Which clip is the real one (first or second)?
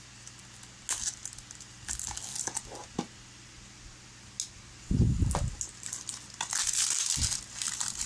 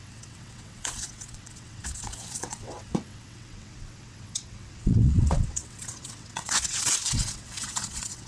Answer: first